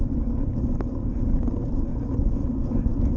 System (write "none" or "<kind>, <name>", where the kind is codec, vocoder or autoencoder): none